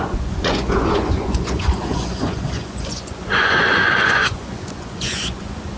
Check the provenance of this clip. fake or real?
fake